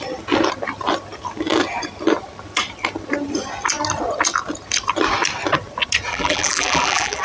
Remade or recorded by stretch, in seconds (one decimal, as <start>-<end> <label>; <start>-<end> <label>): 0.0-6.1 recorded; 6.1-7.2 remade